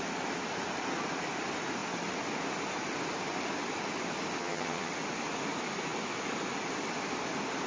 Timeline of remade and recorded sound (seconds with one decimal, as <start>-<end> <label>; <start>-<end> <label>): 0.0-4.4 recorded; 4.4-4.9 remade; 4.9-7.7 recorded